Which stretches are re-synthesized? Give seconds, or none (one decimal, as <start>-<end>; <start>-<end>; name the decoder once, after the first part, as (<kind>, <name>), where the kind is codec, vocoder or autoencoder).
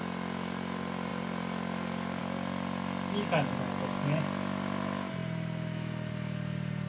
none